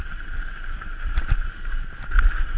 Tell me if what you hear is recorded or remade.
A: recorded